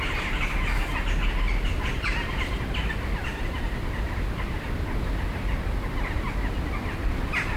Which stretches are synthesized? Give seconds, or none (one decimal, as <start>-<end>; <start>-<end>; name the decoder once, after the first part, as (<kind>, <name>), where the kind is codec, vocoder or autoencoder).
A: 1.7-3.7 (vocoder, BigVGAN v2)